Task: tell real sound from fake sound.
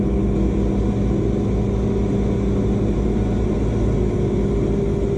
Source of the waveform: real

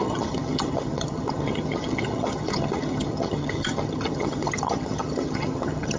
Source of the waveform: fake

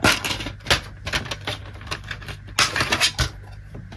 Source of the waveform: real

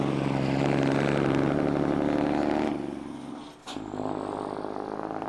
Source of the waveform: real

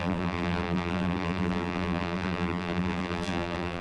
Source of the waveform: fake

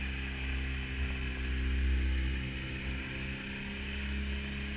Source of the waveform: real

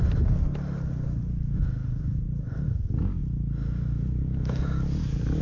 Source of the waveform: real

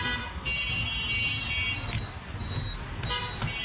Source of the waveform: real